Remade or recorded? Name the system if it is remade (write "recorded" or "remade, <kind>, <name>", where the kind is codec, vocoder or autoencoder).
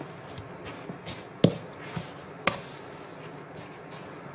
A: recorded